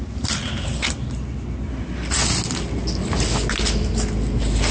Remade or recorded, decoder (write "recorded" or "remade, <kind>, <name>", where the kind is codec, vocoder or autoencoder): recorded